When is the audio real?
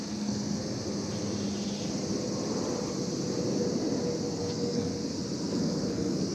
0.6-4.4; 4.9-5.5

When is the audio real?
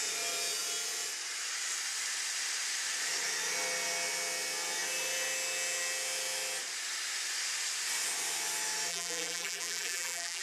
0.0-8.9